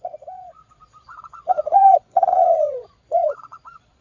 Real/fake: fake